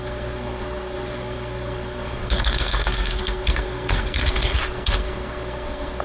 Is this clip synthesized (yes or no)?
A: yes